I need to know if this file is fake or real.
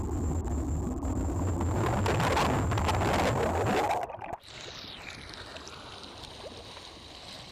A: real